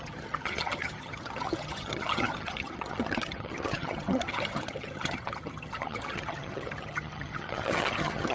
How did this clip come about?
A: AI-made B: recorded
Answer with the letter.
A